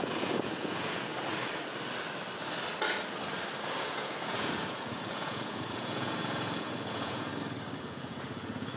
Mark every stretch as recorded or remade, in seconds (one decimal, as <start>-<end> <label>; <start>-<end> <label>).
0.0-1.1 remade; 1.1-3.8 recorded; 3.8-7.3 remade; 7.3-7.8 recorded; 7.8-8.8 remade